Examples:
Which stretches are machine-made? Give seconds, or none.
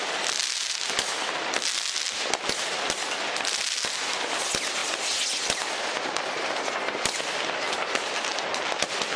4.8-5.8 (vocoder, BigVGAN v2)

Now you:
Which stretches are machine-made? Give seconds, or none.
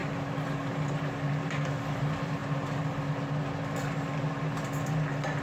0.0-2.0 (vocoder, BigVGAN v2); 2.4-3.1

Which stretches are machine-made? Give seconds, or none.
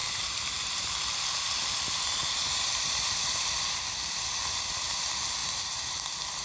0.0-0.9 (vocoder, BigVGAN v2); 5.4-6.0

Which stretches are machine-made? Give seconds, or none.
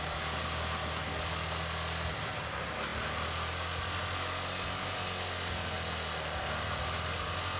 none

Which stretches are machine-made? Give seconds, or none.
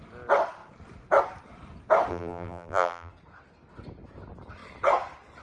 2.1-3.1 (vocoder, BigVGAN v2)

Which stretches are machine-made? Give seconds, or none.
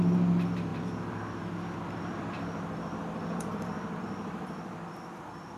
0.0-5.6 (vocoder, BigVGAN v2)